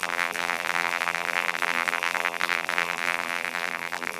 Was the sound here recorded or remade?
remade